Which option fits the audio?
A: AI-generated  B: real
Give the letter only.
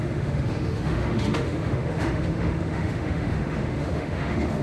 A